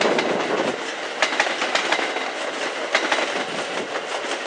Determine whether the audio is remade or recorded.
recorded